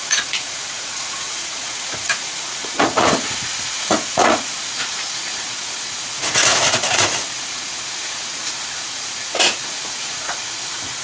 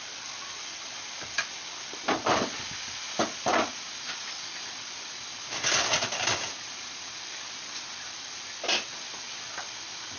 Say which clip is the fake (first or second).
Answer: first